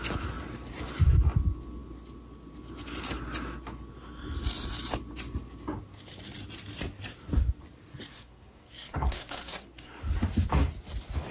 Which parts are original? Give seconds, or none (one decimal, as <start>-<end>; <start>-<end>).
0.0-8.1; 10.0-11.3